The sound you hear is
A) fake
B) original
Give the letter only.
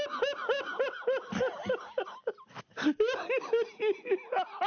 B